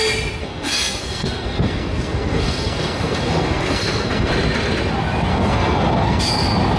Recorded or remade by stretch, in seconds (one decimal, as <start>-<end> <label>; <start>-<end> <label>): 0.0-0.4 recorded; 0.4-4.3 remade; 4.3-5.3 recorded; 5.3-6.2 remade; 6.2-6.8 recorded